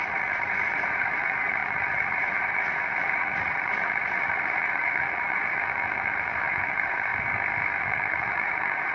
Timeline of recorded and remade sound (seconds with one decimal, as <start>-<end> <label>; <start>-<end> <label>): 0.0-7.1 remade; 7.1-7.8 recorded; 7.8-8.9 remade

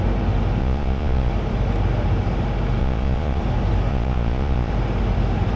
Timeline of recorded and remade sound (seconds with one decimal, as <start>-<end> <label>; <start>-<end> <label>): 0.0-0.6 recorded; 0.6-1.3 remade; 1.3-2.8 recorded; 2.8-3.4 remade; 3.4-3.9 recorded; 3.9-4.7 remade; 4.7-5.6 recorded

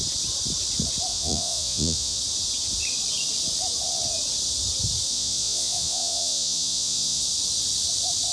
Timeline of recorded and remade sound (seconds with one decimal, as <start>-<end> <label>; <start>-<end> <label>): 0.0-1.1 recorded; 1.1-2.2 remade; 2.2-5.1 recorded; 5.1-7.2 remade; 7.2-8.3 recorded

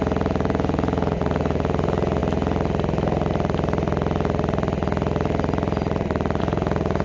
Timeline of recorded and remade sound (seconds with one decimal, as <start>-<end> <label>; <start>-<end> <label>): 0.0-2.2 remade; 2.2-6.4 recorded; 6.4-7.0 remade

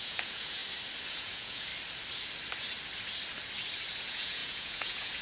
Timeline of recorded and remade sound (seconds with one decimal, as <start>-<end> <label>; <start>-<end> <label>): 0.0-0.6 remade; 0.6-1.1 recorded; 1.1-1.7 remade; 1.7-4.0 recorded; 4.0-5.2 remade

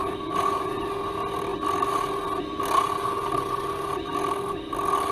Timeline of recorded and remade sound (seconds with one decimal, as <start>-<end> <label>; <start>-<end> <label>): 0.0-0.8 remade; 0.8-5.1 recorded

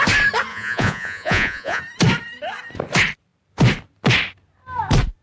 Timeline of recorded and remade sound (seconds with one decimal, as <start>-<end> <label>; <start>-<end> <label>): 0.0-0.5 recorded; 0.5-1.8 remade; 1.8-5.2 recorded

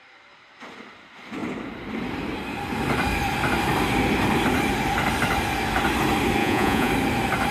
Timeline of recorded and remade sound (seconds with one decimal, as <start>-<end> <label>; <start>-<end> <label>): 0.0-6.4 recorded; 6.4-6.9 remade; 6.9-7.5 recorded